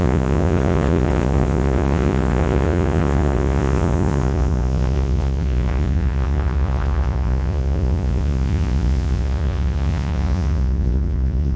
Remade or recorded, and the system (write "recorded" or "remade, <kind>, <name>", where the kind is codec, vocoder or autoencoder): remade, vocoder, Vocos